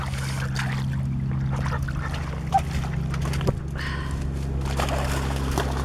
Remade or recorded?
recorded